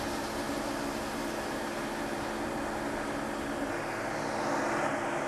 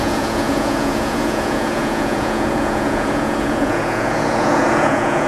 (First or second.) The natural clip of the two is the first